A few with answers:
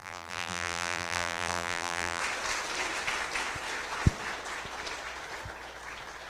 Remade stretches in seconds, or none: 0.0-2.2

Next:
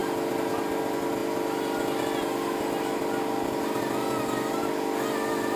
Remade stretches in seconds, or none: none

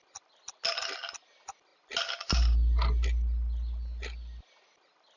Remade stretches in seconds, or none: none

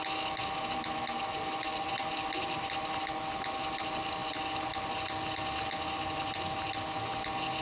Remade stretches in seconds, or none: 0.4-3.6

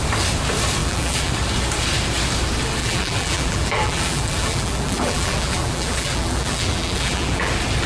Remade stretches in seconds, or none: 0.8-1.3; 2.8-7.5